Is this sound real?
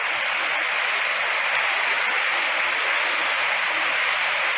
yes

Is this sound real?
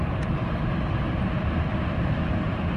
no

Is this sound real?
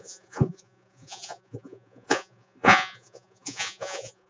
no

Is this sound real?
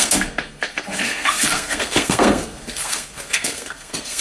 no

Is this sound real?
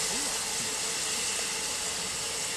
yes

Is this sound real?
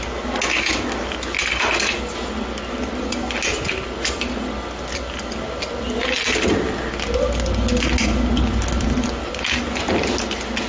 yes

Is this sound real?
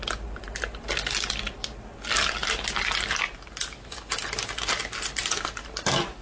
yes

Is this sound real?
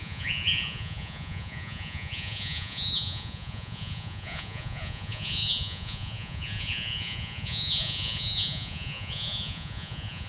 no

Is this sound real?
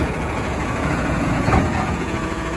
no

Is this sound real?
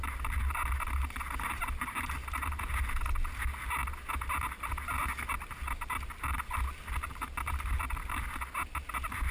yes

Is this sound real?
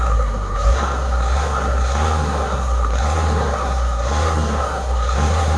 no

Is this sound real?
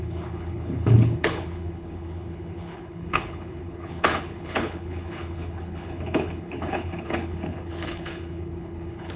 no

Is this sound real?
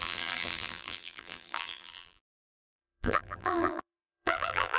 no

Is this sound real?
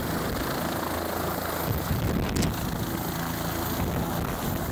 yes